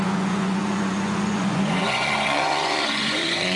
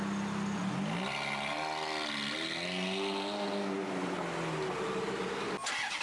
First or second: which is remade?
first